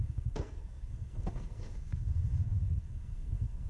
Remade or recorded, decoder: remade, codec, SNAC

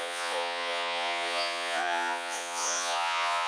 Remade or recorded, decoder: remade, vocoder, Vocos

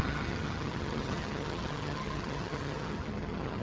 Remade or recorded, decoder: remade, vocoder, HiFi-GAN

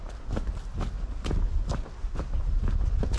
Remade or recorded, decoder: recorded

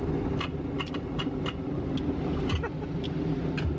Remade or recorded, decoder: recorded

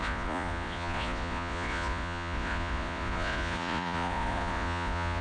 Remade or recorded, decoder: remade, vocoder, Vocos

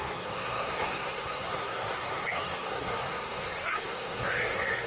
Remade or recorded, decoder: remade, codec, SNAC